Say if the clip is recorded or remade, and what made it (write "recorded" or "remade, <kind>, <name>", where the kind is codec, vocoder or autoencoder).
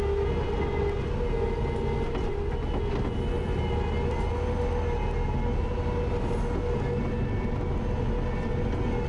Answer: recorded